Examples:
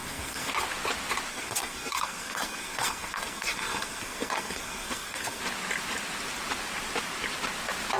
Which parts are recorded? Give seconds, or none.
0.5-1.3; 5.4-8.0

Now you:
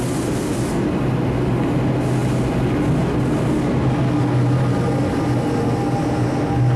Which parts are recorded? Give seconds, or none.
0.0-6.8